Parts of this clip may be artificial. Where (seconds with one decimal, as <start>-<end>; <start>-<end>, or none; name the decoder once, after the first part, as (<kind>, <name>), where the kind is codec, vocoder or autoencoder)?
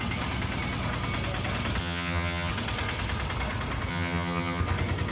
1.8-2.5 (vocoder, HiFi-GAN); 3.9-4.6